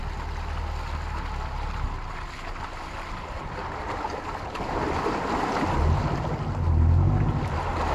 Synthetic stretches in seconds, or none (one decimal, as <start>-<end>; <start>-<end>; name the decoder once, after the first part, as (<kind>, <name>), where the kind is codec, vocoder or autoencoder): none